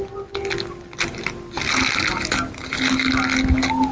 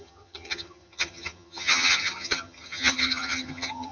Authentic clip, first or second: first